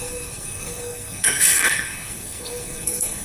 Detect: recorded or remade remade